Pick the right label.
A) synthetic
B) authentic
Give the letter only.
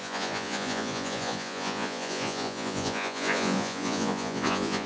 A